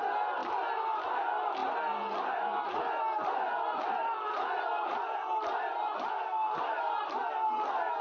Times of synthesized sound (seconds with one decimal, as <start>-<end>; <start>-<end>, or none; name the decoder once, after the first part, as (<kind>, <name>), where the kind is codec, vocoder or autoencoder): 6.1-6.6 (codec, SNAC)